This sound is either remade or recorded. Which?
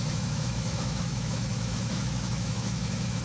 remade